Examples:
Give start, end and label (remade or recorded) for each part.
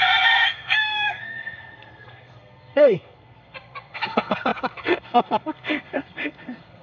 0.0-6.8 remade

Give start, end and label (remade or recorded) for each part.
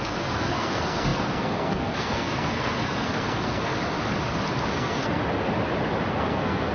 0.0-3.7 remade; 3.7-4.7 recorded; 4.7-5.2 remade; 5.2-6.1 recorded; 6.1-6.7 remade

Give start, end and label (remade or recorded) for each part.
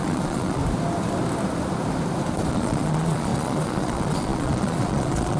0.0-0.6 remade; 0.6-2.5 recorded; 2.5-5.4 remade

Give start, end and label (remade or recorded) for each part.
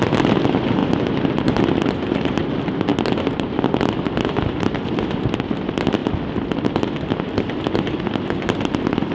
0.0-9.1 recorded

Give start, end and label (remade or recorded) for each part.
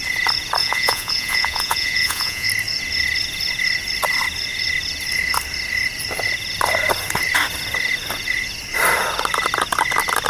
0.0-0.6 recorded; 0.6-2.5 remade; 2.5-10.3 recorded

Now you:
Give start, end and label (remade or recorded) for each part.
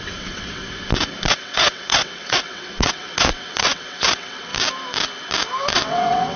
0.0-0.6 remade; 0.6-1.3 recorded; 1.3-4.5 remade; 4.5-5.6 recorded; 5.6-6.4 remade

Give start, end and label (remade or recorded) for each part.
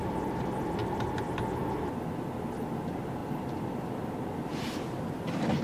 0.0-3.2 recorded; 3.2-5.0 remade; 5.0-5.6 recorded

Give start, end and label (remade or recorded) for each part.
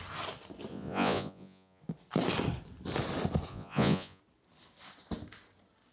0.0-0.7 recorded; 0.7-1.8 remade; 1.8-3.5 recorded; 3.5-4.2 remade; 4.2-5.9 recorded